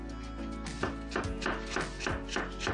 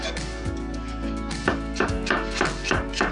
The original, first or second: first